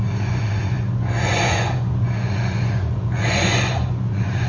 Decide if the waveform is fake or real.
fake